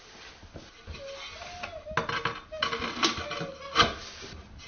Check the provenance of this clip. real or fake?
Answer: real